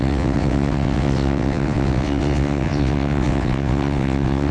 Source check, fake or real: fake